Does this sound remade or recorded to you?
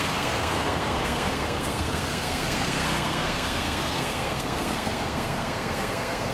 remade